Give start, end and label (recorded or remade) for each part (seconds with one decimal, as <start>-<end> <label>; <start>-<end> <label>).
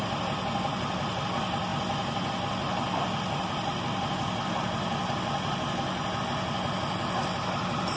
0.0-8.0 recorded